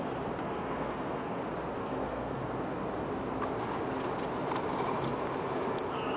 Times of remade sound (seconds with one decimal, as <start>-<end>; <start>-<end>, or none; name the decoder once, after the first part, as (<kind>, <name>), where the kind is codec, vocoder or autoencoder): 0.4-1.4 (codec, SNAC); 1.8-2.5